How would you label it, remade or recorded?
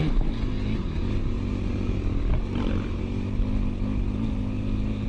recorded